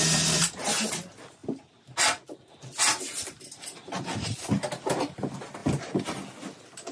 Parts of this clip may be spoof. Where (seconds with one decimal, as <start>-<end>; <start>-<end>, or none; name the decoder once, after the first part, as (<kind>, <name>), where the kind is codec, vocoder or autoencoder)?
none